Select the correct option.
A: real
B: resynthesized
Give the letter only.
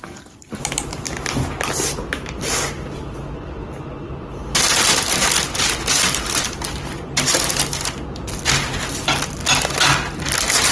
A